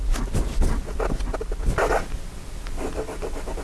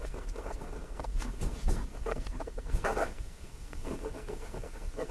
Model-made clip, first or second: second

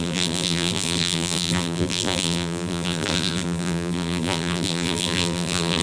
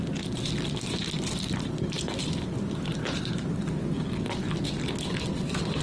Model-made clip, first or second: first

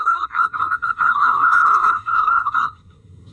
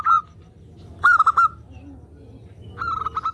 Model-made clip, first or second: first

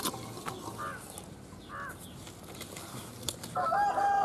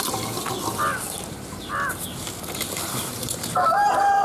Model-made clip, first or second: second